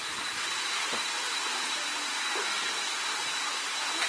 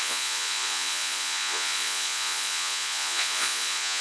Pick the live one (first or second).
first